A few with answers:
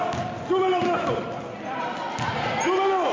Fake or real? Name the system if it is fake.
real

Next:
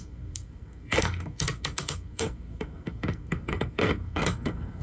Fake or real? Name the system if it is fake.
fake, codec, SNAC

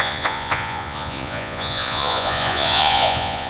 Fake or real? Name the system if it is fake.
fake, vocoder, Vocos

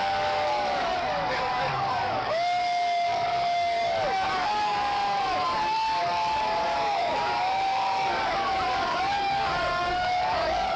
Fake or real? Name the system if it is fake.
fake, codec, DAC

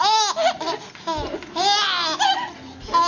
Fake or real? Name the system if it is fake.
real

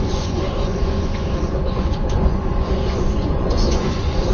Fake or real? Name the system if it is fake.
fake, vocoder, Vocos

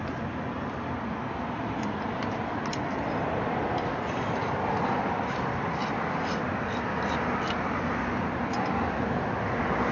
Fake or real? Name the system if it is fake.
real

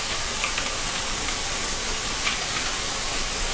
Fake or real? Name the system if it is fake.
fake, codec, DAC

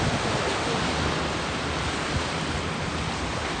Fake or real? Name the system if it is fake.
real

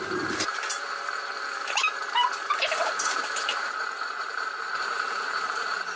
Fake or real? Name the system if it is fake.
fake, vocoder, BigVGAN v2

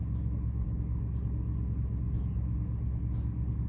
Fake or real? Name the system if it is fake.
real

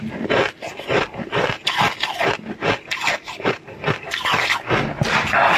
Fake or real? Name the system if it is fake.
real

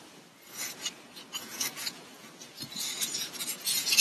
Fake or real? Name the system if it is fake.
fake, vocoder, Vocos